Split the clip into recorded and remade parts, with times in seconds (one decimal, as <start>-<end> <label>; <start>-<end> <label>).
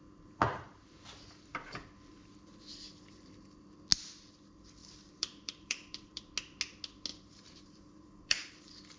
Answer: 0.0-1.5 recorded; 1.5-2.3 remade; 2.3-4.8 recorded; 4.8-6.2 remade; 6.2-7.1 recorded; 7.1-8.6 remade; 8.6-9.0 recorded